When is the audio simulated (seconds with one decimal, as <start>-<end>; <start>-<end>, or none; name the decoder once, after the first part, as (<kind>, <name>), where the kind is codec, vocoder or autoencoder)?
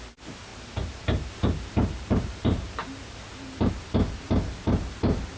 0.5-3.7 (vocoder, BigVGAN v2)